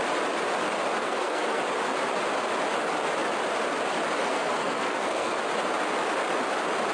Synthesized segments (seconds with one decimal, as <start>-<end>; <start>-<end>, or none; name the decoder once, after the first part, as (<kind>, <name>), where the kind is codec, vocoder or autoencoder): 1.0-1.6 (codec, SNAC); 4.2-5.4